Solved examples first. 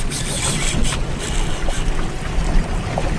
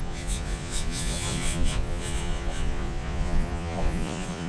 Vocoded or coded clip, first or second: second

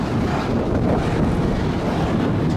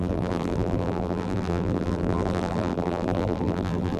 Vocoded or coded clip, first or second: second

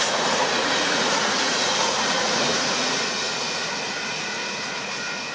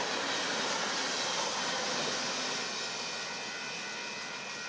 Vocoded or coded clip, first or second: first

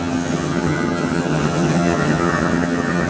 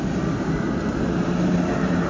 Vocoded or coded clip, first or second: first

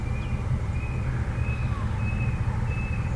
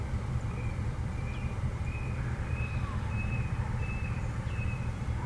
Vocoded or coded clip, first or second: second